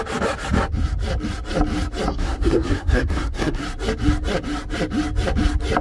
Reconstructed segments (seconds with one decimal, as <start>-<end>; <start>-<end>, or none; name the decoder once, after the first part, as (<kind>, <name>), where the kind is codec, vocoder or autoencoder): 2.1-3.6 (codec, SNAC)